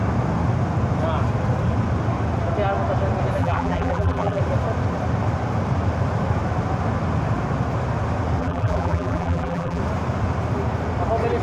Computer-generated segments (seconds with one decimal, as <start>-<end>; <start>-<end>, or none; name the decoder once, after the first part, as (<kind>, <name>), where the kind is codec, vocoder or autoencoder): 3.4-4.4 (vocoder, BigVGAN v2); 8.4-9.8

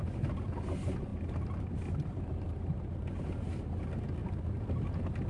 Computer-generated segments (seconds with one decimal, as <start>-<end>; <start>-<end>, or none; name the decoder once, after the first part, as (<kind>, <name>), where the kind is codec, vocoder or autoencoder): 1.1-3.2 (vocoder, BigVGAN v2)

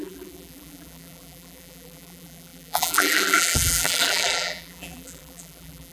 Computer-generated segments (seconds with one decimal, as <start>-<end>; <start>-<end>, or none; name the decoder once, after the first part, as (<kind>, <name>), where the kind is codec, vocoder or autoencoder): 0.0-5.9 (vocoder, BigVGAN v2)

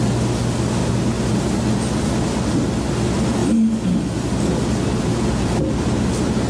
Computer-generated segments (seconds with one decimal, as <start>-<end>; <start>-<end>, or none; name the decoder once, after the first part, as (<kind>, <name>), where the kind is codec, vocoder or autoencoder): none

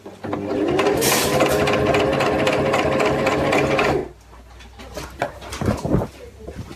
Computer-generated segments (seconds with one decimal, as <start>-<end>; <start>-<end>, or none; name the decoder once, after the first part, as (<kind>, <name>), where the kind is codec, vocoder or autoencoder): none